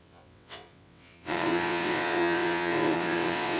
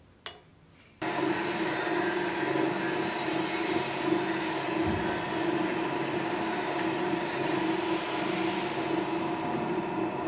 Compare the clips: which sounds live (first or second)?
second